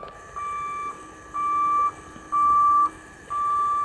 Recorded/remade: recorded